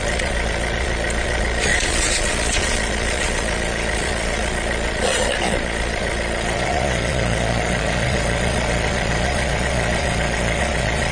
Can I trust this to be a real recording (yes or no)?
no